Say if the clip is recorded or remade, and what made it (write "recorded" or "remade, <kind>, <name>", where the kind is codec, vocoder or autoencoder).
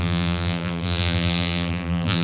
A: remade, vocoder, BigVGAN v2